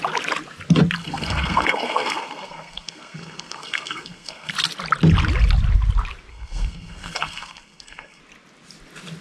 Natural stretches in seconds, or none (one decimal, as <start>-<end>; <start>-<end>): 0.0-1.0; 4.5-6.3; 8.2-9.2